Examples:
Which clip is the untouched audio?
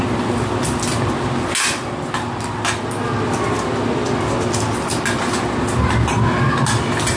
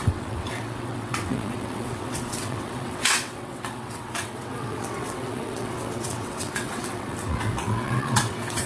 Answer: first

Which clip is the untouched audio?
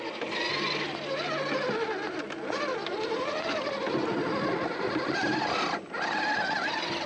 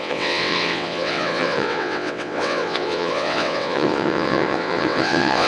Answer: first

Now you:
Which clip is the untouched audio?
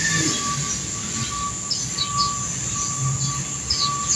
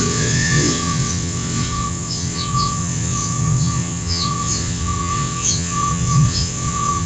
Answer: first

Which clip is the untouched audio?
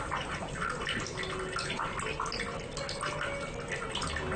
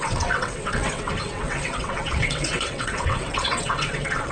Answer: first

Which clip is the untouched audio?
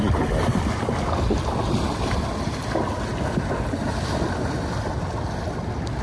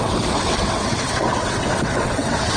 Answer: first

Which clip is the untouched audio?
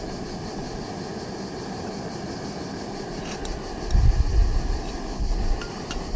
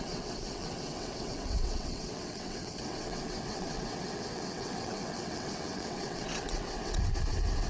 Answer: first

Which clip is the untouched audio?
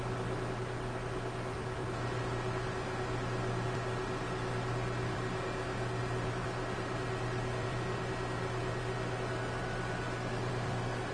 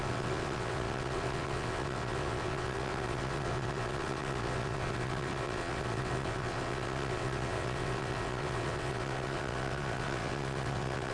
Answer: first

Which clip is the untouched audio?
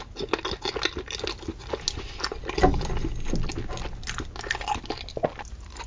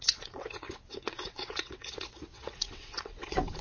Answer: first